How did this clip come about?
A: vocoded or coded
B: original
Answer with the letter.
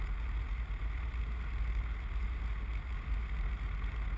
B